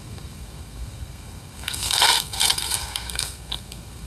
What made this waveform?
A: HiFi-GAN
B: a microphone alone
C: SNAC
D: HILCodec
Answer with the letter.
C